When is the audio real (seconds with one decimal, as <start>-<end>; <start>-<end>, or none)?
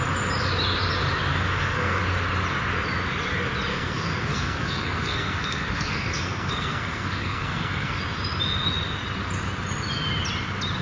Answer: 0.0-1.3; 2.0-3.7; 8.0-10.8